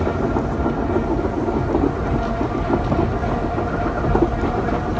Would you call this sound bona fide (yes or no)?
yes